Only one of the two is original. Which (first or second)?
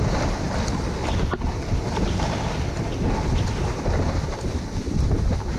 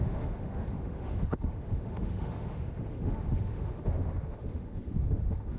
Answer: first